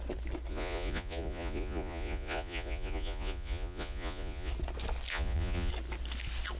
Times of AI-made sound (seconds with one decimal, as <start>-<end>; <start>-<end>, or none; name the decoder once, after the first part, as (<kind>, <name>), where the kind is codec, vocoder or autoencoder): 0.5-4.5 (vocoder, Vocos); 5.1-5.7